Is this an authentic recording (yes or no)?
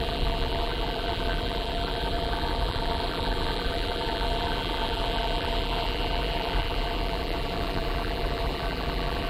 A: no